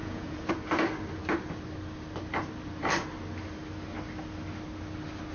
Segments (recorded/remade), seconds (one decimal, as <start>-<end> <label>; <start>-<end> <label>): 0.0-0.5 remade; 0.5-5.3 recorded